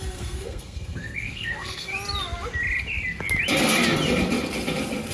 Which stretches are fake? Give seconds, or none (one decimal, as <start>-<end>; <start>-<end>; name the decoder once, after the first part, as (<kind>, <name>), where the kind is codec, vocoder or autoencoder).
0.0-1.9 (codec, SNAC)